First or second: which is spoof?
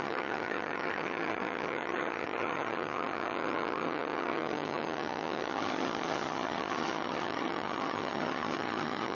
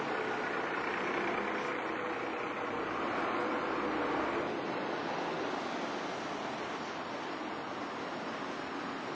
first